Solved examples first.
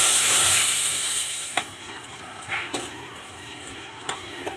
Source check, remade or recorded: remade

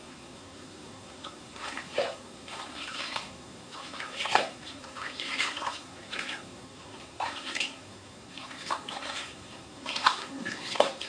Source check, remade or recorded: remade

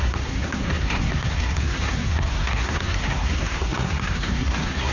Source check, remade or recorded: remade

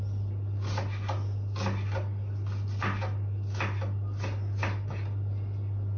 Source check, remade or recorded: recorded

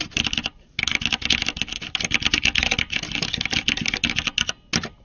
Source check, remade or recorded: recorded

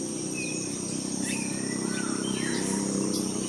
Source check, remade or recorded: recorded